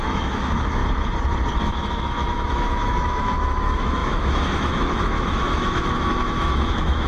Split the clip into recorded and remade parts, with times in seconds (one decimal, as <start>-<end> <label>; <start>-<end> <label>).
0.0-0.8 remade; 0.8-1.6 recorded; 1.6-7.1 remade